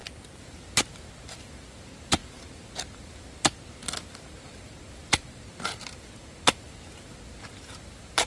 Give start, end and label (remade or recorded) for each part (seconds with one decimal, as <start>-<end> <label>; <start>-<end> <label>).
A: 0.0-8.3 recorded